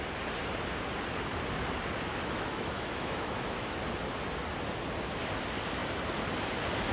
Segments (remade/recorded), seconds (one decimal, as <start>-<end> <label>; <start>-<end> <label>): 0.0-2.1 recorded; 2.1-3.8 remade; 3.8-6.9 recorded